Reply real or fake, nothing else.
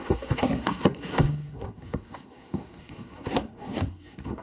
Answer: fake